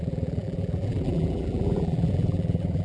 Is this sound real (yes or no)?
no